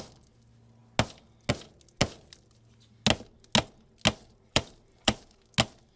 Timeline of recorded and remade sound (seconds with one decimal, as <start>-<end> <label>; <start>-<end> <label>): 0.0-4.2 recorded; 4.2-5.4 remade; 5.4-6.0 recorded